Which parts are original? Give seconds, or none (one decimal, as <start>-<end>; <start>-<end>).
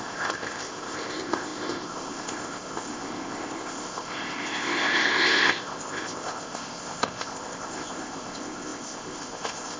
none